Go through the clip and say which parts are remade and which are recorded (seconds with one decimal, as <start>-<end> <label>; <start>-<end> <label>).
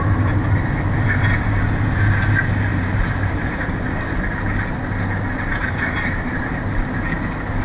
0.0-2.7 recorded; 2.7-3.7 remade; 3.7-5.6 recorded; 5.6-6.4 remade; 6.4-7.6 recorded